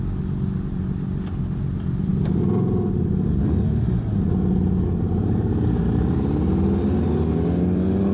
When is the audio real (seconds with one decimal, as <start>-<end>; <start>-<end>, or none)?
0.0-8.1

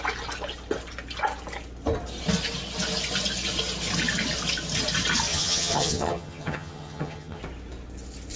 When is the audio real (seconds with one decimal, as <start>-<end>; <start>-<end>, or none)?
0.0-5.3; 7.4-8.4

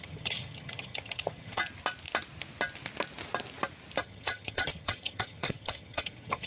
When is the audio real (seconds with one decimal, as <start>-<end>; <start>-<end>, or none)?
1.6-4.0

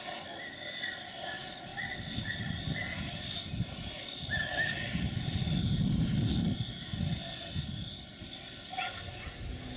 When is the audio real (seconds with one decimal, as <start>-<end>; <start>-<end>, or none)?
0.0-9.8

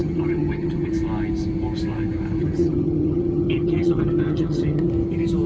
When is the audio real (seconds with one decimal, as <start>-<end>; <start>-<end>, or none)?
0.9-2.4; 4.9-5.5